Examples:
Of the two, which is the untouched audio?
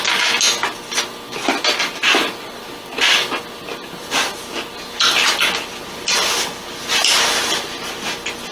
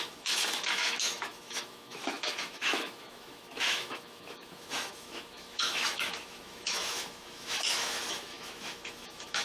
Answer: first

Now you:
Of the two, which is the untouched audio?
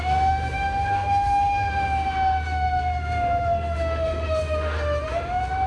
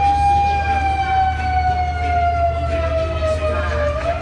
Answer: second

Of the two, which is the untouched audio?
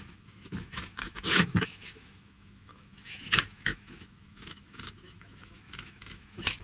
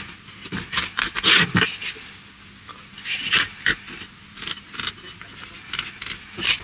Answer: second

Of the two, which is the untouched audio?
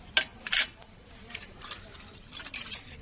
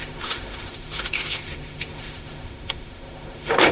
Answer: first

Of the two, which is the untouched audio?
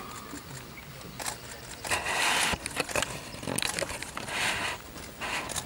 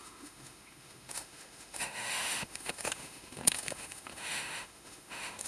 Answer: first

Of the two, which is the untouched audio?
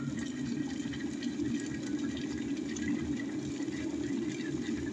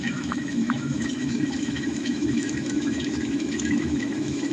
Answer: first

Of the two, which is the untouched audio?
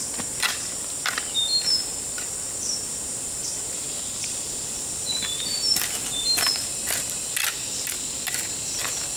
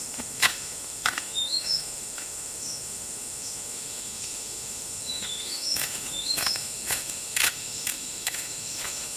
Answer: first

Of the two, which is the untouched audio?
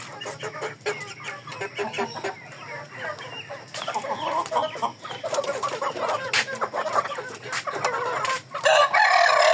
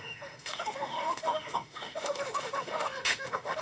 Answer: first